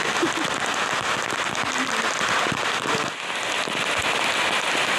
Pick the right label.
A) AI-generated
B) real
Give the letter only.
B